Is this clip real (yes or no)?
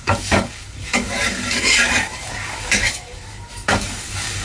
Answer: no